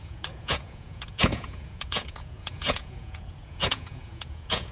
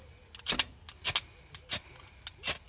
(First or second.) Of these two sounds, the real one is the second